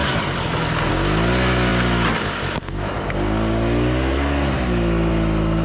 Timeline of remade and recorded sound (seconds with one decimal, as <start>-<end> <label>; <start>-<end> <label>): 0.0-5.6 recorded